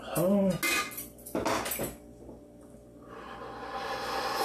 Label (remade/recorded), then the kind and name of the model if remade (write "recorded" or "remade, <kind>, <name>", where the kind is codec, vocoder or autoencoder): recorded